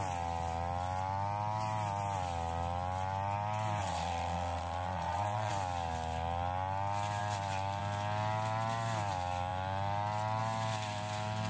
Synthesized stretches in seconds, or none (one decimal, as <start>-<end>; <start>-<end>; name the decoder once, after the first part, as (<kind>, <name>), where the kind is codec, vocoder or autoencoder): 3.8-5.5 (vocoder, Vocos)